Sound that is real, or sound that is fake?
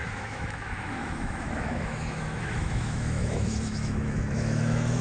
fake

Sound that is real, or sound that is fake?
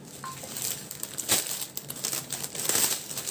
real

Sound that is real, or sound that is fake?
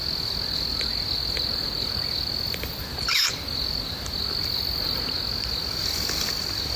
real